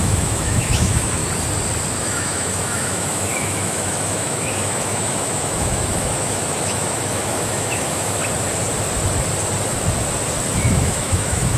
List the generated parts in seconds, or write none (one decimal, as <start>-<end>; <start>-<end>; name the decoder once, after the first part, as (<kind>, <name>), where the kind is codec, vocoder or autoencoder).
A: 0.0-1.2 (autoencoder, DAC-VAE); 2.0-8.2; 10.6-11.6